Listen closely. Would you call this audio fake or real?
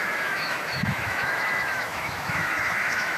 fake